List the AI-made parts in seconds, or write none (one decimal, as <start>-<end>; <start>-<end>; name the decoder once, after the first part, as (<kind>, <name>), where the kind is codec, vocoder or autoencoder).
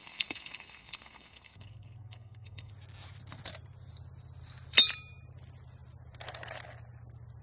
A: 0.0-2.7 (codec, SNAC)